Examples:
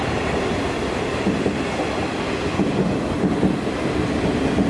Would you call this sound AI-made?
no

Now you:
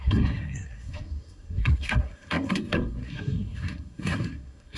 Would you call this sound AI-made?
yes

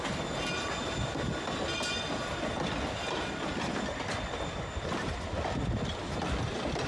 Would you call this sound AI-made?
no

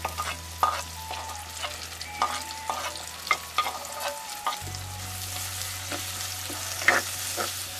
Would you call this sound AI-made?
no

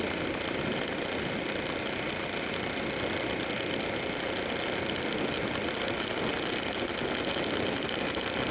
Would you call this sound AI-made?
no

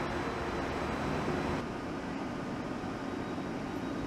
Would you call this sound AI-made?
no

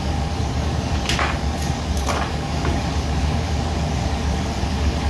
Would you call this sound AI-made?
yes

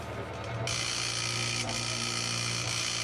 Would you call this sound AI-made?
no